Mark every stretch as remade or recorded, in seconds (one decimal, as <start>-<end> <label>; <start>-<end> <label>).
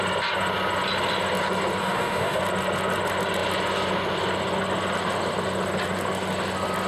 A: 0.0-1.8 recorded; 1.8-2.4 remade; 2.4-6.9 recorded